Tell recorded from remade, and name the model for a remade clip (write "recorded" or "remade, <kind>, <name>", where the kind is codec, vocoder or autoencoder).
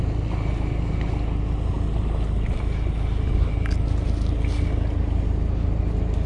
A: recorded